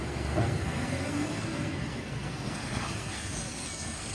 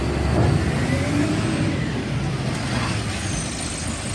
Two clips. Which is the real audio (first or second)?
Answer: second